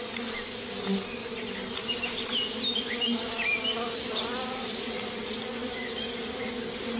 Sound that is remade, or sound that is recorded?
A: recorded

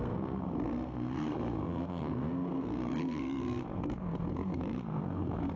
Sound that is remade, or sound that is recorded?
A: remade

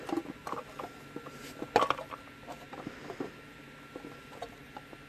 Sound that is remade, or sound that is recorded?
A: recorded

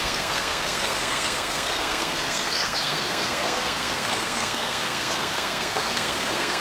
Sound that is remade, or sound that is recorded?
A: remade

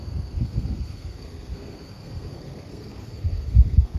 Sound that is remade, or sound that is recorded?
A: remade